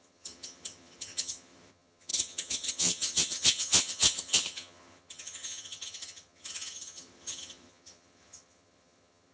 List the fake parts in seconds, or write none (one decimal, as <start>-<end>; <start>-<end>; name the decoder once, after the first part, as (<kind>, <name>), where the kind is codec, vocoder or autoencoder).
0.0-9.3 (vocoder, HiFi-GAN)